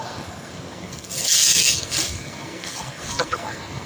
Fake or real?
fake